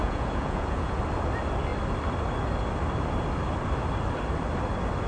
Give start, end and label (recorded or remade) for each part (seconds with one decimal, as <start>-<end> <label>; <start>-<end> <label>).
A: 0.0-1.0 remade; 1.0-5.1 recorded